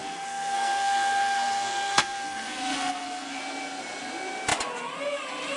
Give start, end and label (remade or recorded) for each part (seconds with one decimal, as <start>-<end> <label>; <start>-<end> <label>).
0.0-3.4 remade; 3.4-5.6 recorded